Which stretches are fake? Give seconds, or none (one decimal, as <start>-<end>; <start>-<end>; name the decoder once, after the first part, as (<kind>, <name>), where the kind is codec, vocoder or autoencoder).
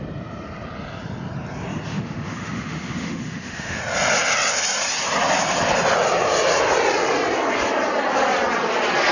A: 1.9-3.8 (autoencoder, DAC-VAE)